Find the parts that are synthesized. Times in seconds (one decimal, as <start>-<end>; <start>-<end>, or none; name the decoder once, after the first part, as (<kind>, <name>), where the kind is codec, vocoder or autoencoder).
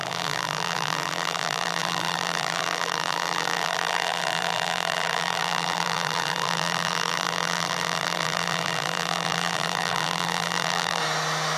0.0-11.0 (vocoder, BigVGAN v2)